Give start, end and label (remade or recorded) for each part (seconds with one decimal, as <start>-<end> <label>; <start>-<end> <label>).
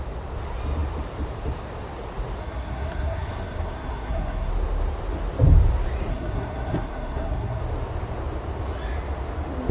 0.0-2.4 recorded; 2.4-4.5 remade; 4.5-6.1 recorded; 6.1-7.6 remade; 7.6-9.7 recorded